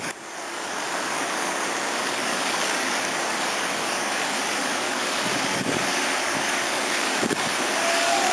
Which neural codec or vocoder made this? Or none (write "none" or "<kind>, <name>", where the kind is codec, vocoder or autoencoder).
codec, DAC